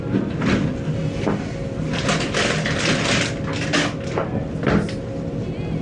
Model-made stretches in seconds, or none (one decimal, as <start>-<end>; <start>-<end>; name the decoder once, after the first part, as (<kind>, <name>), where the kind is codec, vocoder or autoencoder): none